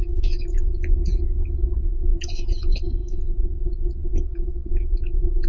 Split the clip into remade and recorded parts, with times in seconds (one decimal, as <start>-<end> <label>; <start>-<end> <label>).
0.0-5.5 remade